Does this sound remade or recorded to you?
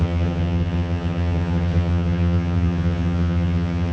remade